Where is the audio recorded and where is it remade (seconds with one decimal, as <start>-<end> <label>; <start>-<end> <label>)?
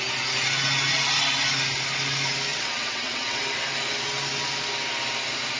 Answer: 0.0-2.5 recorded; 2.5-3.4 remade; 3.4-5.6 recorded